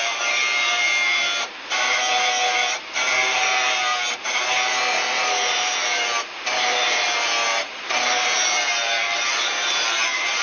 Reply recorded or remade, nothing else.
remade